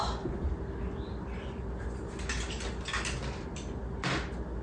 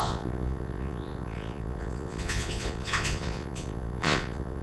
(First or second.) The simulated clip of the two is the second